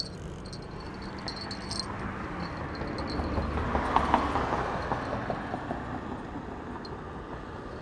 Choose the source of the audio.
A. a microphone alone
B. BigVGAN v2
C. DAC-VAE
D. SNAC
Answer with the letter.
A